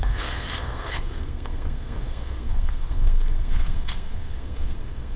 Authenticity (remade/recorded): remade